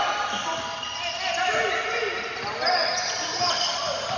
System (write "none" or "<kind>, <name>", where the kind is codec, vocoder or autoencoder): none